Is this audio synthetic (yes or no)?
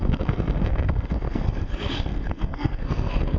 yes